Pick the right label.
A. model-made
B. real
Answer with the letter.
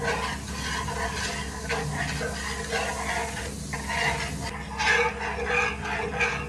B